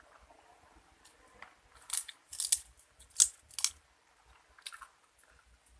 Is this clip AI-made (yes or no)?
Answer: no